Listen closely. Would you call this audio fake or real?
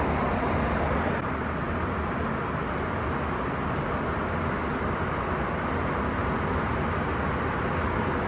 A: real